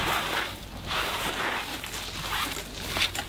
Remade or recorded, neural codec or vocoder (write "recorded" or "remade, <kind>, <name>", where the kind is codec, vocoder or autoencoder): recorded